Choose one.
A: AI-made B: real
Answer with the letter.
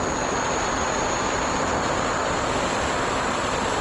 B